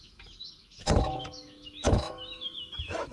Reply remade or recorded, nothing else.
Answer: remade